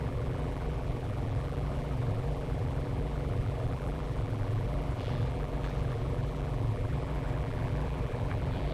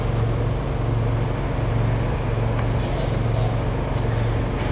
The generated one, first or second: first